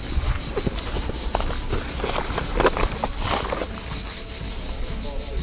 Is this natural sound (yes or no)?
yes